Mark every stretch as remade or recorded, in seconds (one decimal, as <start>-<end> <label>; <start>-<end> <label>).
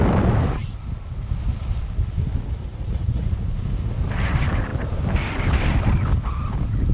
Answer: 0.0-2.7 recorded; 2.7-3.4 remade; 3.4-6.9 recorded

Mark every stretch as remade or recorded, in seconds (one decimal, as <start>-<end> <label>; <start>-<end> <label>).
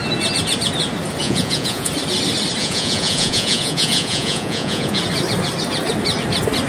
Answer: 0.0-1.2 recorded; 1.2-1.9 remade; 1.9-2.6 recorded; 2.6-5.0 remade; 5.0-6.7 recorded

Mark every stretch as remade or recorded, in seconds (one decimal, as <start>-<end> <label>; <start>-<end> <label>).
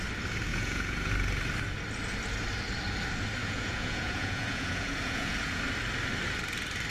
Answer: 0.0-0.5 recorded; 0.5-1.1 remade; 1.1-3.4 recorded; 3.4-5.6 remade; 5.6-6.9 recorded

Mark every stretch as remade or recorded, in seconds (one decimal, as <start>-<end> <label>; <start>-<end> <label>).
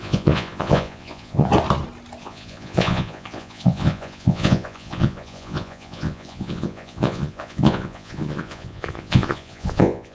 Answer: 0.0-1.5 remade; 1.5-2.2 recorded; 2.2-10.1 remade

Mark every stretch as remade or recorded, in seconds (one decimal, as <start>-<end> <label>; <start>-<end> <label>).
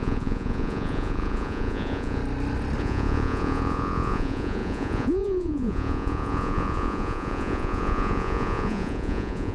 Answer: 0.0-2.2 remade; 2.2-2.8 recorded; 2.8-9.5 remade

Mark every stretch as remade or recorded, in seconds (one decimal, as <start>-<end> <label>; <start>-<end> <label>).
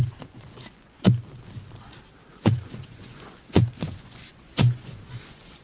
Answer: 0.0-1.1 remade; 1.1-2.3 recorded; 2.3-5.6 remade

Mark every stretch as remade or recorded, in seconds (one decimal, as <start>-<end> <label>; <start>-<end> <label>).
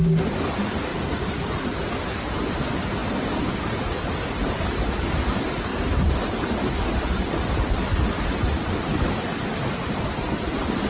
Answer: 0.0-0.9 recorded; 0.9-1.9 remade; 1.9-10.9 recorded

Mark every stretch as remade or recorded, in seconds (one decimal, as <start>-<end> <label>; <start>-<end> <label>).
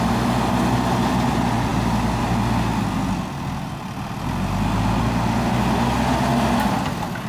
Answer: 0.0-7.3 recorded